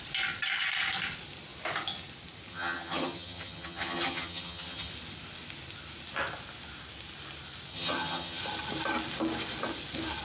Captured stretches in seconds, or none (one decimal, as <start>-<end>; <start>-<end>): 0.0-2.5; 4.9-7.7; 8.4-10.2